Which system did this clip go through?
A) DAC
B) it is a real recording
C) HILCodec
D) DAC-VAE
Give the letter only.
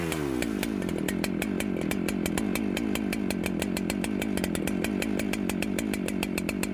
B